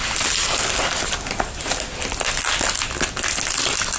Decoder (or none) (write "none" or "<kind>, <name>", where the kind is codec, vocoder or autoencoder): none